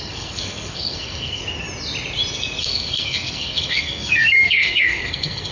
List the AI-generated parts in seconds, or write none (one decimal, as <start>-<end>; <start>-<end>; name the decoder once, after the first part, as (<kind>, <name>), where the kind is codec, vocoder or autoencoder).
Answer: 0.0-1.4 (codec, SNAC); 2.6-5.5